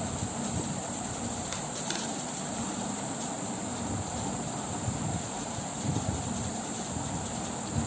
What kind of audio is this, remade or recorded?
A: remade